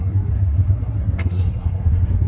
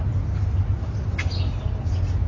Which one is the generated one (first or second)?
first